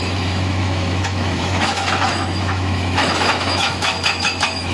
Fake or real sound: fake